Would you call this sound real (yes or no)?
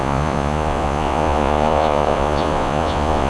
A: no